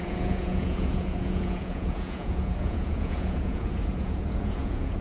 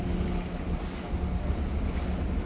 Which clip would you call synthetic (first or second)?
first